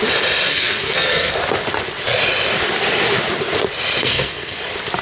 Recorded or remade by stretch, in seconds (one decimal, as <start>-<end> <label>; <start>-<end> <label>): 0.0-0.5 recorded; 0.5-1.3 remade; 1.3-4.0 recorded; 4.0-4.6 remade; 4.6-5.0 recorded

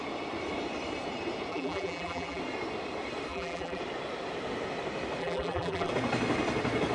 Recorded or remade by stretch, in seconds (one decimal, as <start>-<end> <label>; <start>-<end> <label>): 0.0-1.5 recorded; 1.5-2.4 remade; 2.4-3.3 recorded; 3.3-3.8 remade; 3.8-5.2 recorded; 5.2-5.9 remade; 5.9-6.9 recorded